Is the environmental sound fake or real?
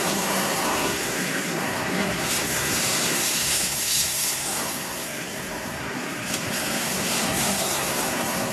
fake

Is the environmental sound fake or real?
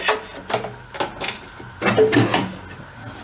real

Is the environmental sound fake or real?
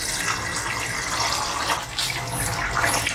real